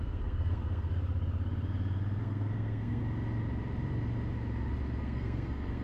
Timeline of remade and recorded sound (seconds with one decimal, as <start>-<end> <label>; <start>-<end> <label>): 0.0-0.9 remade; 0.9-2.2 recorded; 2.2-3.0 remade; 3.0-5.0 recorded; 5.0-5.8 remade